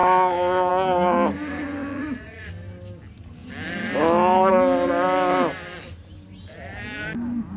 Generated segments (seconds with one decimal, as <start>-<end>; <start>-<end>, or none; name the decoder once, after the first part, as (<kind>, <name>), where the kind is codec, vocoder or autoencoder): 1.9-2.5 (vocoder, Vocos)

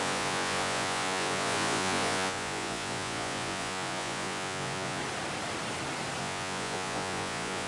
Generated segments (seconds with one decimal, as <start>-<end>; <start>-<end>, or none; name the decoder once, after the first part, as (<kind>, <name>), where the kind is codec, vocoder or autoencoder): 0.0-5.0 (vocoder, Vocos); 6.2-7.7

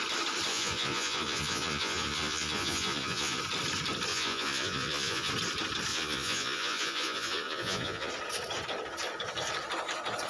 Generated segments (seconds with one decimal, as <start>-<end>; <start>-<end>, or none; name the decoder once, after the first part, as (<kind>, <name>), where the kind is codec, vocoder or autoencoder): 0.5-3.4 (vocoder, Vocos); 4.1-5.3; 5.9-8.1

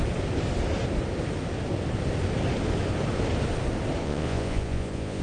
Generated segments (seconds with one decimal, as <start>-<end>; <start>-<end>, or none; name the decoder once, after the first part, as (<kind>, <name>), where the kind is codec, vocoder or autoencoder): 4.0-5.2 (vocoder, Vocos)

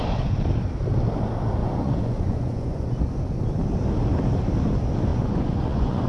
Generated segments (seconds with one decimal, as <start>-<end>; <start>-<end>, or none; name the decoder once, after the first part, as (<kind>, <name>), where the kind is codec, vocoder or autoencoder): 1.6-3.0 (vocoder, Vocos); 5.1-6.1

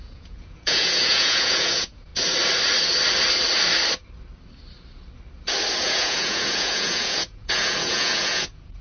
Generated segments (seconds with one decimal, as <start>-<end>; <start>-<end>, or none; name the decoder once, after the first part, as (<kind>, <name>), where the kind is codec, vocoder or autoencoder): 0.0-2.1 (vocoder, Vocos); 5.8-8.8

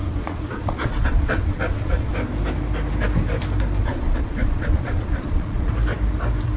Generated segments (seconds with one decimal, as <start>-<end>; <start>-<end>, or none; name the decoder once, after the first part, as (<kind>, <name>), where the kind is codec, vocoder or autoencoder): 0.0-2.1 (vocoder, Vocos); 3.8-5.7